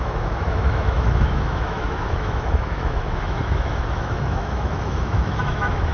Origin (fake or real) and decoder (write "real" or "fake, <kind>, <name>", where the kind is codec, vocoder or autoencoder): fake, autoencoder, DAC-VAE